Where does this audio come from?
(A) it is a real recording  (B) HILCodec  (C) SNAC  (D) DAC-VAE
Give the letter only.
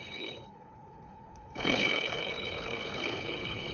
B